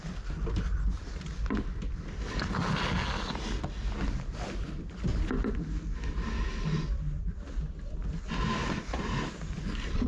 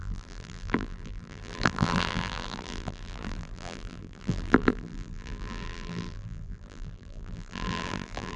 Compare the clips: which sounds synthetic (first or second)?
second